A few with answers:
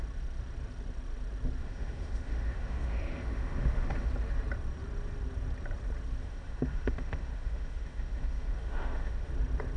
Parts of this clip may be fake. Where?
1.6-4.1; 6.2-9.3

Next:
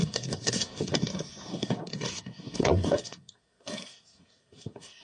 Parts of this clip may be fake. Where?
0.0-5.0

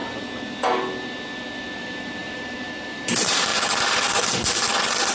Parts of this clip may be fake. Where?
1.8-3.5

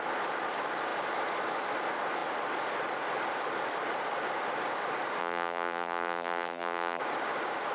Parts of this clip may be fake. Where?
5.2-7.0

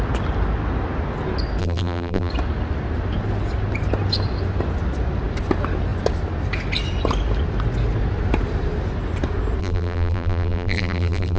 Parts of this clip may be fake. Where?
1.6-2.3; 9.6-11.4